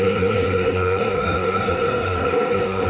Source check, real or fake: fake